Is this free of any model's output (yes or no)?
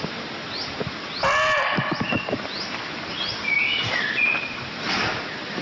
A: yes